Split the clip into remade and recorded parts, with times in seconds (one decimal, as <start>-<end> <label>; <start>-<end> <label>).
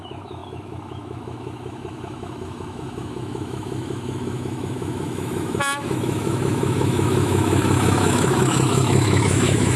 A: 0.0-9.8 remade